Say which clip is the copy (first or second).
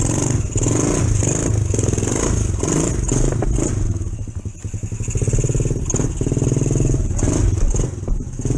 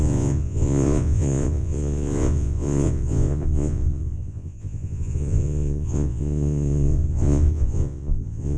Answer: second